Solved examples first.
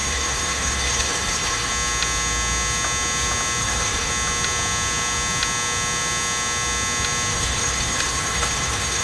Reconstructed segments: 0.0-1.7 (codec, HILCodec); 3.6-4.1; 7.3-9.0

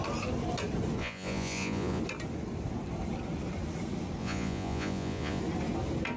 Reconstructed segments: 1.0-2.0 (vocoder, Vocos); 4.2-5.4

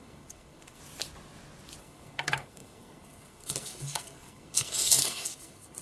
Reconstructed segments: 0.0-0.8 (codec, SNAC); 1.8-5.8

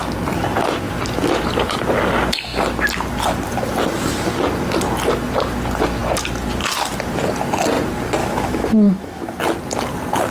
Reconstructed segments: 8.2-9.4 (autoencoder, DAC-VAE)

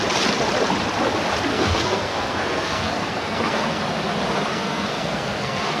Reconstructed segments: 1.5-3.8 (codec, SNAC); 4.5-5.8

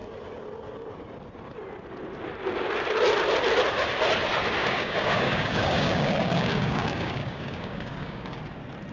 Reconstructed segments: 4.6-8.4 (codec, DAC)

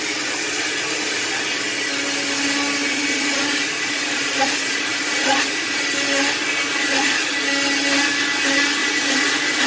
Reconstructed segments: 2.8-5.8 (vocoder, Vocos); 6.6-7.3; 8.8-9.7